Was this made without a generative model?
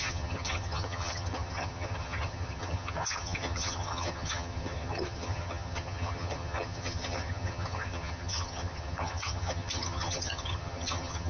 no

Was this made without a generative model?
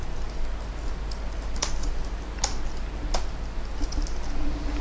yes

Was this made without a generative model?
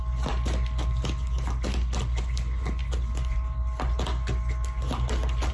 yes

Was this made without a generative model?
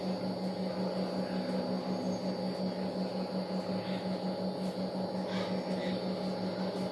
yes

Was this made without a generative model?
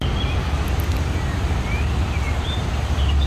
yes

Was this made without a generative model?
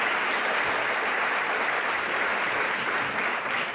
yes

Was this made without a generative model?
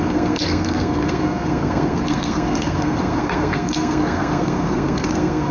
no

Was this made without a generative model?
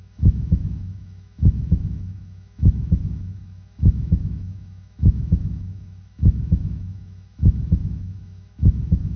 no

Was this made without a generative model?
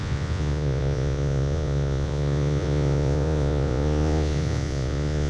no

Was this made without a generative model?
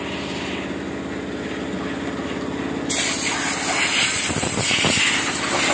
yes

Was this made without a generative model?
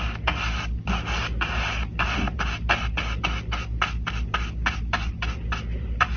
yes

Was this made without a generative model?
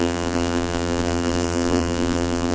no